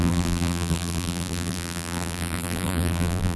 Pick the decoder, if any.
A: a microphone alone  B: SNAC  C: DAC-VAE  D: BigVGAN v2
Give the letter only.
D